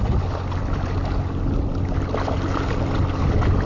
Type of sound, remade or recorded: recorded